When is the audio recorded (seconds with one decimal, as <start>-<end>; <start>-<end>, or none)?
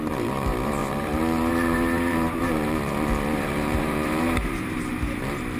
none